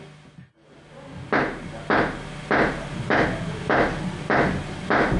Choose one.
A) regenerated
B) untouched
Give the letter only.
B